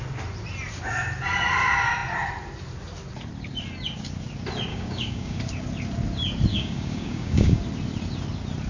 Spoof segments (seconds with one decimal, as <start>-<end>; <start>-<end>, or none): 4.7-5.4; 6.5-7.6